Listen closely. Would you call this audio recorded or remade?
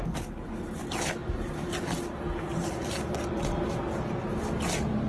recorded